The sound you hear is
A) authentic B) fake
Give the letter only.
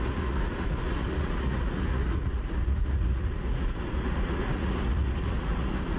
B